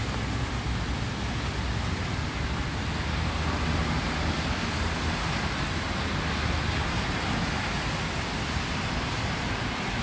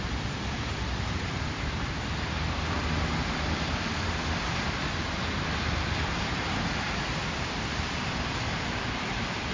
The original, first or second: first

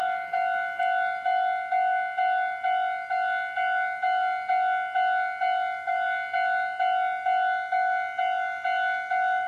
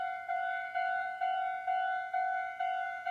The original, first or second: first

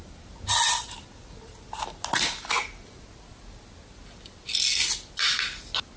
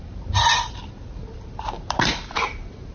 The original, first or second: first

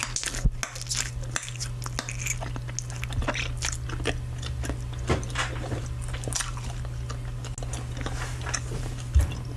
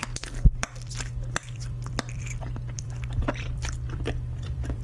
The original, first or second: first